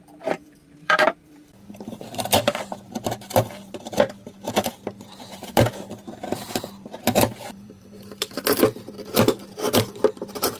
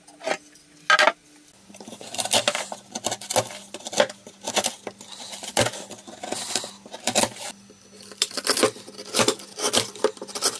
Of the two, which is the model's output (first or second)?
first